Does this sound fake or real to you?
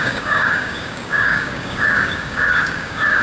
fake